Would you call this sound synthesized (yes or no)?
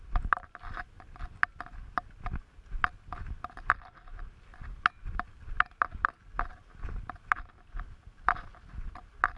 no